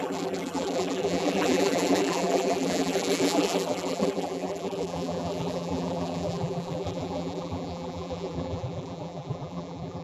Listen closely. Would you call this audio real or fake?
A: fake